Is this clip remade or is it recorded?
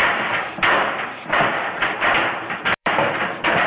remade